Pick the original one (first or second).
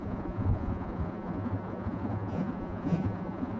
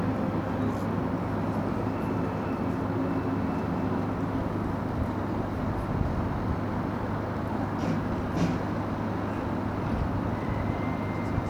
second